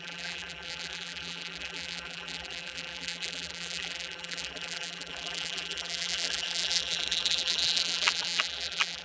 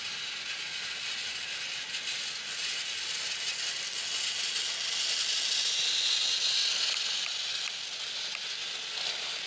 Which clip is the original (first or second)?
second